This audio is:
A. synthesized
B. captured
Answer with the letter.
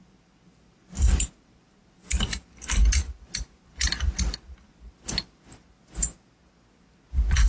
B